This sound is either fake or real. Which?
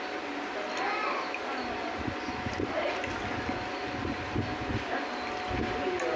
real